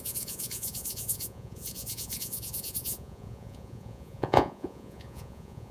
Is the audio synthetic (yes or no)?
yes